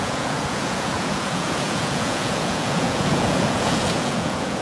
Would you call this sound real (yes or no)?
no